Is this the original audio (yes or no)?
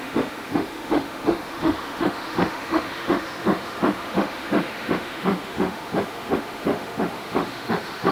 no